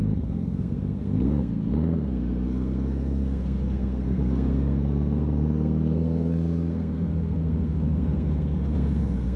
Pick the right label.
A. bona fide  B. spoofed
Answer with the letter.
B